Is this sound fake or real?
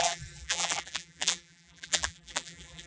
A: fake